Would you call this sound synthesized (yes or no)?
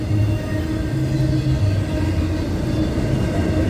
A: no